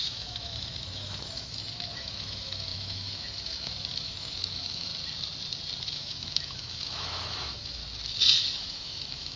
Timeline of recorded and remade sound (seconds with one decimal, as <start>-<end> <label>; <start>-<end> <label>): 0.0-4.9 remade; 4.9-5.9 recorded; 5.9-7.8 remade; 7.8-8.4 recorded; 8.4-9.4 remade